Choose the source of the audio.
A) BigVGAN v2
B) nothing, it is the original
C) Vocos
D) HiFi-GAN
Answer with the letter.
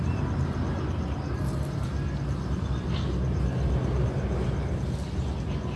B